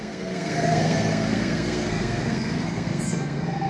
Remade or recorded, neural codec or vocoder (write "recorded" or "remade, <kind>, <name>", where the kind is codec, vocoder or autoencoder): remade, codec, SNAC